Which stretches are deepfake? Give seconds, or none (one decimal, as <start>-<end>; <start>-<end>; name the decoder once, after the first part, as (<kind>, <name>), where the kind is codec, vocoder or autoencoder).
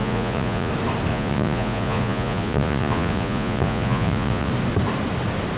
0.0-0.7 (vocoder, Vocos); 1.1-4.5